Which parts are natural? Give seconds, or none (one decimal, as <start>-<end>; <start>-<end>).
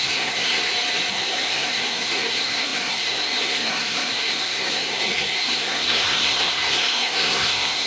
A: 0.6-1.1